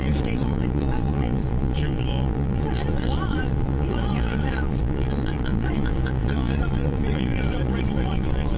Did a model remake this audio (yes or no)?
yes